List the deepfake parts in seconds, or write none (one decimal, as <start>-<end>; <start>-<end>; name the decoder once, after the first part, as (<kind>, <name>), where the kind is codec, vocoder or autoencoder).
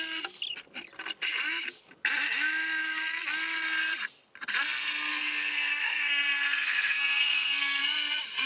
5.1-7.8 (codec, SNAC)